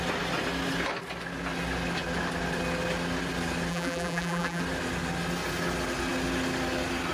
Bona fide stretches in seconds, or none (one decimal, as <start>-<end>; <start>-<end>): 0.0-3.7; 4.6-7.1